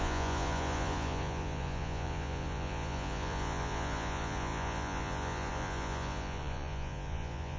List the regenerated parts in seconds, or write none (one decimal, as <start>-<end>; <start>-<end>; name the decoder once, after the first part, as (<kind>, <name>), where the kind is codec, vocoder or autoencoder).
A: 0.0-7.6 (vocoder, Vocos)